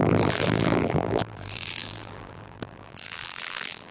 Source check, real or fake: fake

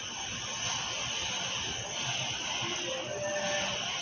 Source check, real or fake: real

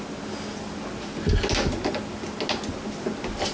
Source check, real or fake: real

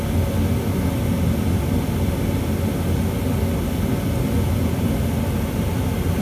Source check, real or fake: real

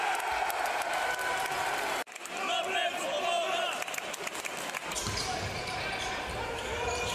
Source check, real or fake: real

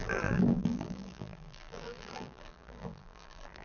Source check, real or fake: fake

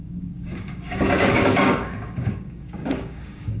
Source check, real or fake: fake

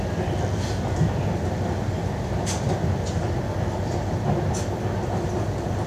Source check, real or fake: real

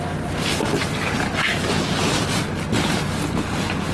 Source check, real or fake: real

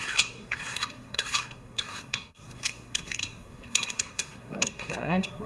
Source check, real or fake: fake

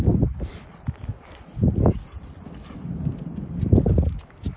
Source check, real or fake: fake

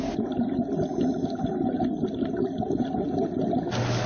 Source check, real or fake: real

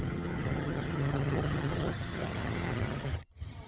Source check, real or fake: fake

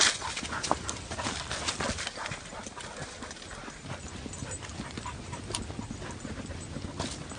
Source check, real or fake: real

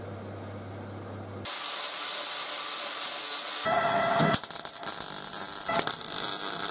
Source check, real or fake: real